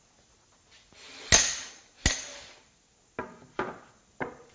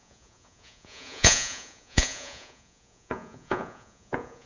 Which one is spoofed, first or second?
second